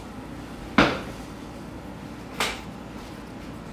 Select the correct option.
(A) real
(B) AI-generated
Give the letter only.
A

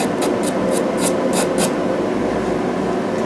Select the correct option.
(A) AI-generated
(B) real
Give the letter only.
B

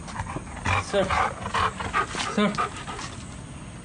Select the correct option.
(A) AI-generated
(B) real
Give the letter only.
B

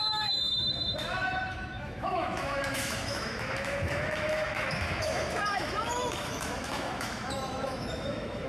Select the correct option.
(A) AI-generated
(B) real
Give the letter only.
A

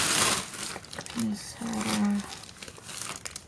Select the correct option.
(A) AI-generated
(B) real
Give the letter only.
B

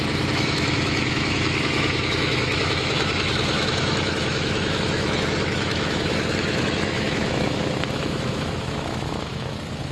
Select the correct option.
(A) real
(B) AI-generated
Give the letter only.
B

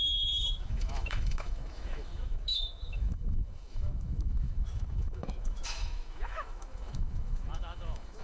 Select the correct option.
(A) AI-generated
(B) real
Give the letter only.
A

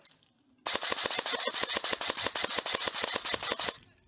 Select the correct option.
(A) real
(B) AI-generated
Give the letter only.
A